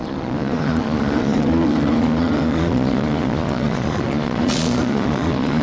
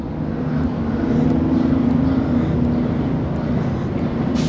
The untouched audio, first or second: second